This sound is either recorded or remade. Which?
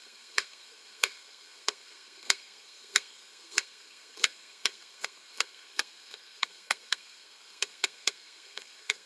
remade